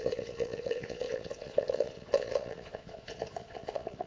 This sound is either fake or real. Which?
fake